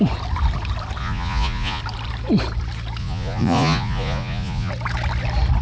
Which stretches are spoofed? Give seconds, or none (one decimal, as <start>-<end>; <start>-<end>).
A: 1.0-1.8; 3.0-4.7